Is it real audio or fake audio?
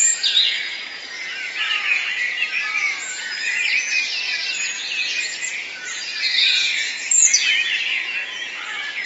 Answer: fake